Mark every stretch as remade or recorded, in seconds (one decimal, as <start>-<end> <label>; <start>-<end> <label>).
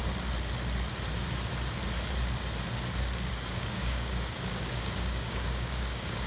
0.0-3.3 recorded; 3.3-6.3 remade